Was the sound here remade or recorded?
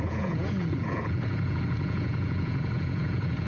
remade